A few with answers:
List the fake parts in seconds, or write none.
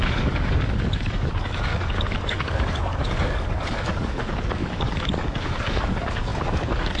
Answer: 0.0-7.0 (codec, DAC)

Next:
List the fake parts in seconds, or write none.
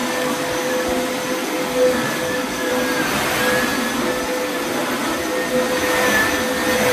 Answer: 0.0-0.7 (codec, DAC); 1.4-2.7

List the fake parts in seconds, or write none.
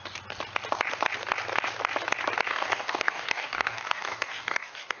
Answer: 2.5-5.0 (codec, DAC)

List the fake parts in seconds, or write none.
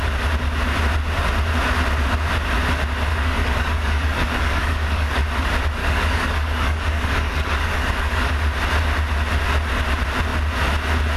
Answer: 3.1-5.2 (codec, DAC); 5.8-8.3